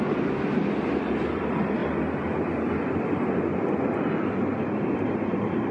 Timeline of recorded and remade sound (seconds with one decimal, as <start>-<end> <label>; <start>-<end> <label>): 0.0-1.8 remade; 1.8-3.0 recorded; 3.0-3.5 remade; 3.5-4.8 recorded; 4.8-5.7 remade